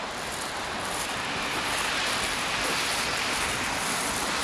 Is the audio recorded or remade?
recorded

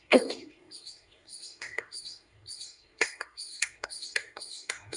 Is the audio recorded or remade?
remade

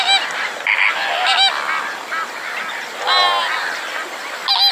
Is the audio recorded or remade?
recorded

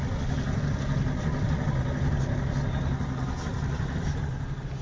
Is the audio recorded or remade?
recorded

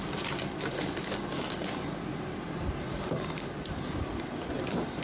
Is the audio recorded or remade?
recorded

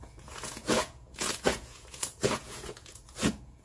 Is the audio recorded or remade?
remade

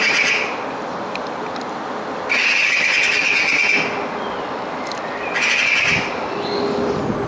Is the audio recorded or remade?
recorded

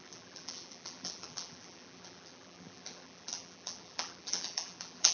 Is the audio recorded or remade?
remade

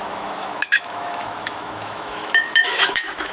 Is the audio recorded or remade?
remade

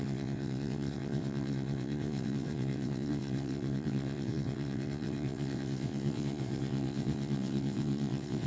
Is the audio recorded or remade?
remade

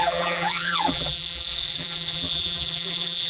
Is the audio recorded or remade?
remade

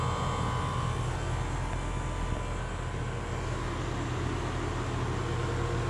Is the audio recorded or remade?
recorded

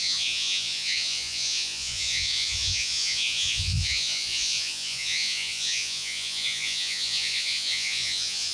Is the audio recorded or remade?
remade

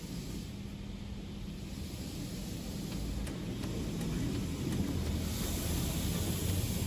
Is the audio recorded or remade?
recorded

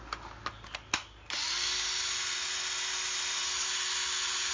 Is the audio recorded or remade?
recorded